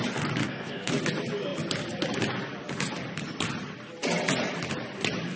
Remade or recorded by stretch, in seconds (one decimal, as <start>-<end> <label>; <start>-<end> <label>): 0.0-0.4 recorded; 0.4-0.9 remade; 0.9-5.4 recorded